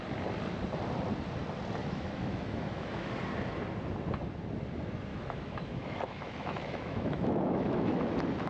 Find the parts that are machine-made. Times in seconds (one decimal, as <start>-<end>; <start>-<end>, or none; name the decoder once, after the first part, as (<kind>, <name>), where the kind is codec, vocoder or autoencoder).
1.8-3.1 (autoencoder, DAC-VAE); 5.1-8.0

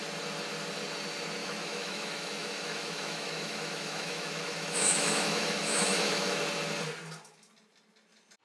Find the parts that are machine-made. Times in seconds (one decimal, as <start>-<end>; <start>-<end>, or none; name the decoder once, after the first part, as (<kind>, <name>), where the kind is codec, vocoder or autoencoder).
1.4-6.4 (autoencoder, DAC-VAE)

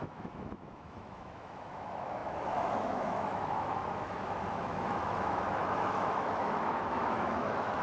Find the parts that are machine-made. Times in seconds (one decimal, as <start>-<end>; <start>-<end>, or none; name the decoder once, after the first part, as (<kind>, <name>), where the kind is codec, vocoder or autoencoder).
0.0-7.8 (autoencoder, DAC-VAE)

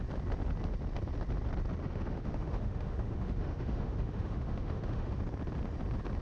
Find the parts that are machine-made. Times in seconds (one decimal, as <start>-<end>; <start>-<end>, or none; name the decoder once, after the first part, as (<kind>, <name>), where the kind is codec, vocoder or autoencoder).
1.8-5.2 (autoencoder, DAC-VAE)

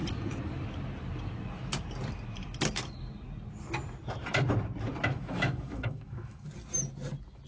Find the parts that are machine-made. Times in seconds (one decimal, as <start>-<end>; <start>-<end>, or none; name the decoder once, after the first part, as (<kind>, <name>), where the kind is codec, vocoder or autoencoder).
5.1-6.5 (autoencoder, DAC-VAE)